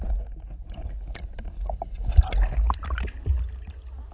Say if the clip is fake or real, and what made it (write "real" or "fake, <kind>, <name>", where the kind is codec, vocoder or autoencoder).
real